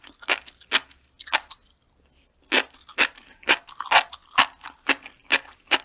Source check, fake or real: real